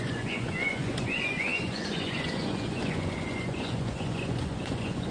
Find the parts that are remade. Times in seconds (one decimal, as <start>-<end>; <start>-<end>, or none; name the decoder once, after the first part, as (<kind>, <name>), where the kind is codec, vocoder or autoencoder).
0.0-5.1 (vocoder, Vocos)